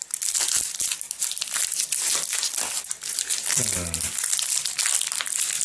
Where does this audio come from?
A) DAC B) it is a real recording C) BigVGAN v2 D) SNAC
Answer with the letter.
B